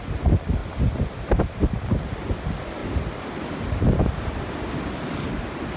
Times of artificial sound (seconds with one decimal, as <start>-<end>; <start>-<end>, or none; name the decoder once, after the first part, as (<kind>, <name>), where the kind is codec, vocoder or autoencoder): none